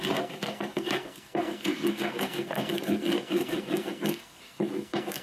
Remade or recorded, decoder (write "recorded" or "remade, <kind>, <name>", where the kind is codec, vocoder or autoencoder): remade, codec, SNAC